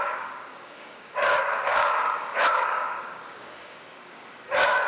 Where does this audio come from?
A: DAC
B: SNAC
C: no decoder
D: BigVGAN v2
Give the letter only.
A